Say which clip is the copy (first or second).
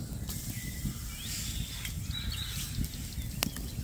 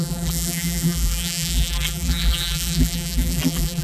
second